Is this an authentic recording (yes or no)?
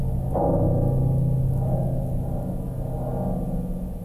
yes